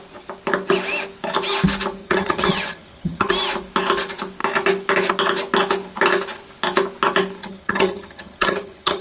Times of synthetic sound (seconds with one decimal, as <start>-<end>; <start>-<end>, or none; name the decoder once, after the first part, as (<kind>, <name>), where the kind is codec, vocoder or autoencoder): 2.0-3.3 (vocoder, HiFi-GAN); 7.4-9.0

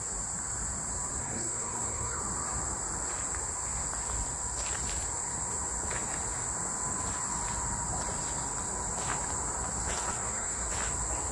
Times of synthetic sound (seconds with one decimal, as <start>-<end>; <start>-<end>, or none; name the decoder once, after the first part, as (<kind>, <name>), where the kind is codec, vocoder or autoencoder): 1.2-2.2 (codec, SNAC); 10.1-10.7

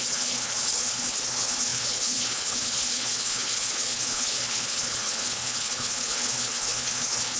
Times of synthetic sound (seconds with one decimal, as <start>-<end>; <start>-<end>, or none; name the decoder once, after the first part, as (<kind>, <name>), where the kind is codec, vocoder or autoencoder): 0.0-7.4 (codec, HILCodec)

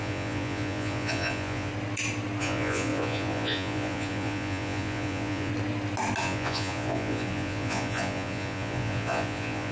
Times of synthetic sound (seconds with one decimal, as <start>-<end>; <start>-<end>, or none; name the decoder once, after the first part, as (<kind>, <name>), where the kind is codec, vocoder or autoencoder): 0.0-1.7 (vocoder, Vocos); 2.4-5.5; 6.2-9.7